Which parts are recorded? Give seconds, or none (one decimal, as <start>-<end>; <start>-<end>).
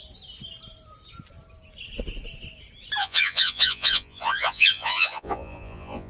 0.0-3.0